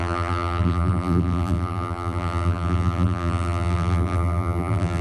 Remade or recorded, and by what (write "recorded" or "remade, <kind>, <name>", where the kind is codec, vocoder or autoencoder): remade, vocoder, BigVGAN v2